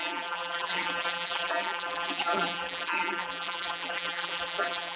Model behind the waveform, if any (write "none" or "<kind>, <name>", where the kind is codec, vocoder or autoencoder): vocoder, BigVGAN v2